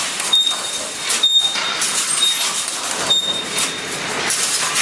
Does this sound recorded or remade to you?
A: recorded